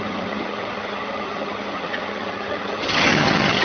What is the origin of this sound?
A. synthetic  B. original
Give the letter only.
A